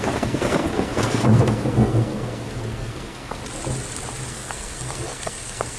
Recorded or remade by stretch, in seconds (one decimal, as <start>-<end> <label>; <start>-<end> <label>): 0.0-3.4 remade; 3.4-4.3 recorded; 4.3-5.8 remade